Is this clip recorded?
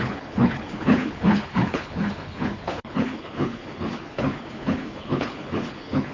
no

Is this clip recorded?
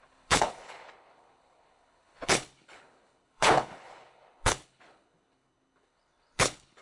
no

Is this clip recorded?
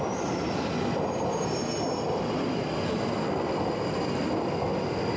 yes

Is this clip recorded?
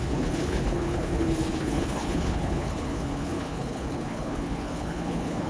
no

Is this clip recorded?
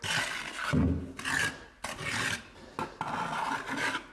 yes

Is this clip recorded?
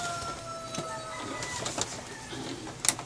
yes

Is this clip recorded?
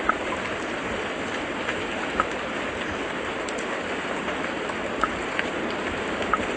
yes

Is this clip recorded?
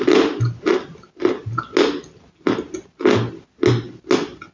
yes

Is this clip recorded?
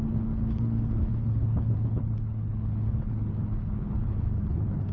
no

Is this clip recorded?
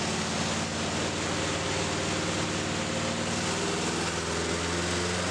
yes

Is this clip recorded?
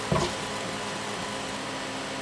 yes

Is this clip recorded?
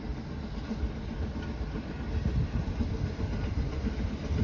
yes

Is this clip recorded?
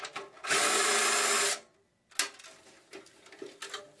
yes